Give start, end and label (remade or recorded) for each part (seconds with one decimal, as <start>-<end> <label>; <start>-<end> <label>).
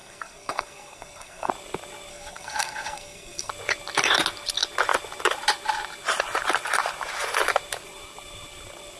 0.0-1.5 remade; 1.5-2.1 recorded; 2.1-3.5 remade; 3.5-9.0 recorded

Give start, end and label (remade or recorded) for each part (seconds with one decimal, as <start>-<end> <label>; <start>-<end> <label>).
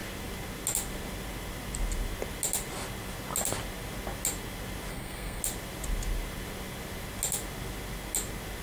0.0-4.9 recorded; 4.9-5.4 remade; 5.4-8.6 recorded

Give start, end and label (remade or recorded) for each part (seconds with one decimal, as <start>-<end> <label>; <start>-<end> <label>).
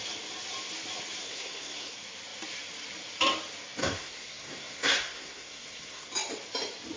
0.0-1.2 recorded; 1.2-1.9 remade; 1.9-3.8 recorded; 3.8-6.1 remade; 6.1-7.0 recorded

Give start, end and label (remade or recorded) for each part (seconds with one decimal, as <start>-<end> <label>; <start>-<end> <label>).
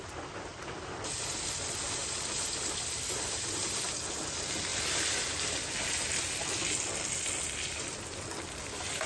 0.0-9.1 recorded